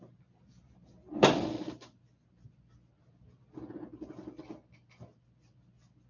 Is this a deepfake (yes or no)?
no